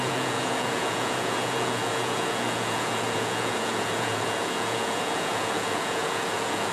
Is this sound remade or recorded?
remade